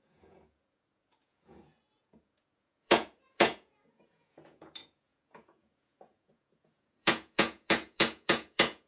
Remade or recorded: remade